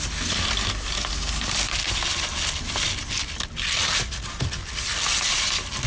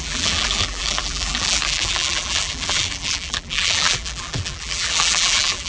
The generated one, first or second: second